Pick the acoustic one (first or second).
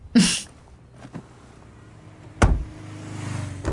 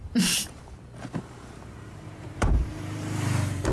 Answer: first